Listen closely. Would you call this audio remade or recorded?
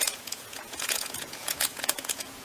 remade